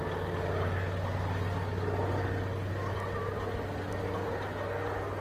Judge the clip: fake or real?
real